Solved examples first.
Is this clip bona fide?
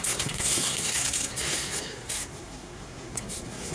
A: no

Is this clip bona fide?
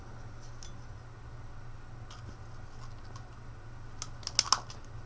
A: yes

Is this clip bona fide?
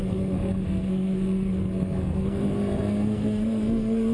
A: no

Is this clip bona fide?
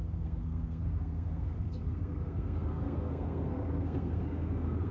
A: no